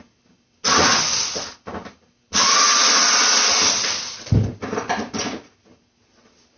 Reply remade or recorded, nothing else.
recorded